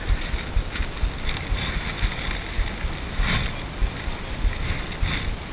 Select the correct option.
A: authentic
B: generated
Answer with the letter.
A